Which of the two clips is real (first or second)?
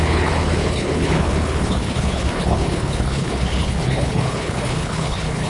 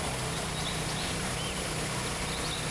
second